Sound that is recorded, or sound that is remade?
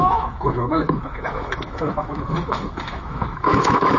remade